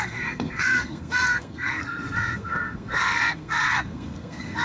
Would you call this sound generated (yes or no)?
yes